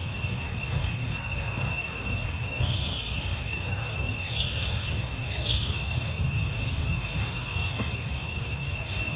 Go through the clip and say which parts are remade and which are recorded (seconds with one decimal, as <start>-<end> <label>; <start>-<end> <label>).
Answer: 0.0-9.2 remade